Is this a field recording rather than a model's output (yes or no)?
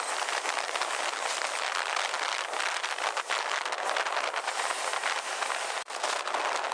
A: yes